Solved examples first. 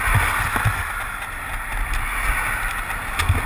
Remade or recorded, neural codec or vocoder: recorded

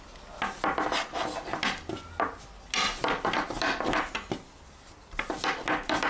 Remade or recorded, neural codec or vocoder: recorded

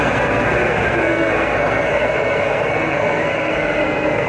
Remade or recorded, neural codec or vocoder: remade, codec, SNAC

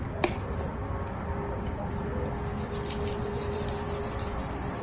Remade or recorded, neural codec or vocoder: recorded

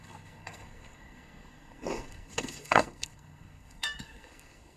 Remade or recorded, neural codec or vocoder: remade, codec, SNAC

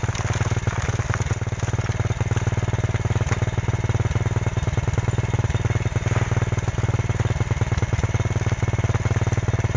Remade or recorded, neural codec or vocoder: recorded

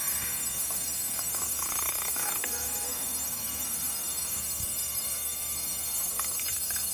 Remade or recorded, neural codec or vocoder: remade, codec, SNAC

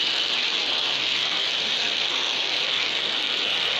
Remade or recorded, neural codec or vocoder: remade, codec, SNAC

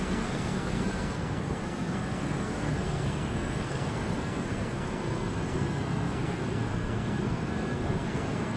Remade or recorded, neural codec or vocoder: remade, codec, SNAC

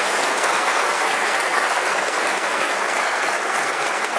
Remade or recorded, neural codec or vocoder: remade, codec, SNAC